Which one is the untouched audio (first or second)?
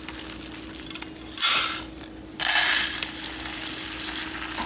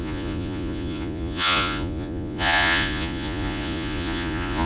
first